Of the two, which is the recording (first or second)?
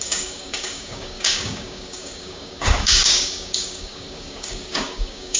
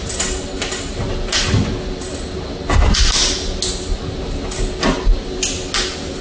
second